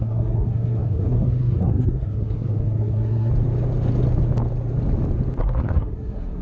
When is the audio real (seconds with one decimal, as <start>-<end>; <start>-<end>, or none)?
3.3-5.4